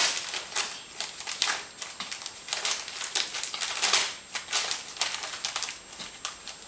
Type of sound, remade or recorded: recorded